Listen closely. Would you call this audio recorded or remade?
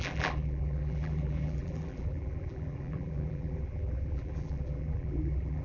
remade